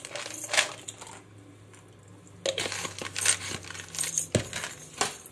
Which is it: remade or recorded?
recorded